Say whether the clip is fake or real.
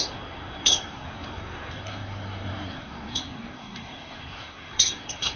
fake